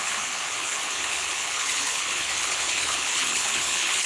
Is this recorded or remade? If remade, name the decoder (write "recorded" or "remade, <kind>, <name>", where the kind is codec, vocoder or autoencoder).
remade, codec, HILCodec